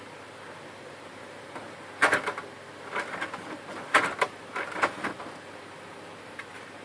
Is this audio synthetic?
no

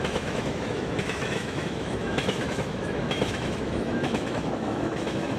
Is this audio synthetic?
yes